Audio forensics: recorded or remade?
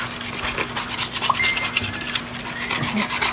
recorded